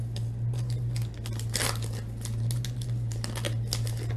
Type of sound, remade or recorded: recorded